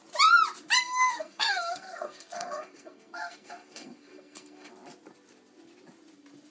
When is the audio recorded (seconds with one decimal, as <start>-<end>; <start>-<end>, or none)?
0.0-0.8; 4.7-6.5